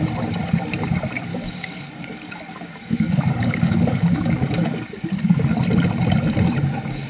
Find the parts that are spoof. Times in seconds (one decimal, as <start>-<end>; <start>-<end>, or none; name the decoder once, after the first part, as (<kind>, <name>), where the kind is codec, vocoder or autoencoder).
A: 1.3-5.6 (codec, DAC)